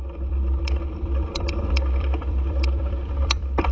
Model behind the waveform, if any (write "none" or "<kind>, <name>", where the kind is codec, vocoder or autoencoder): vocoder, BigVGAN v2